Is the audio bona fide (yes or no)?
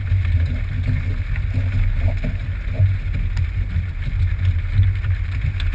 yes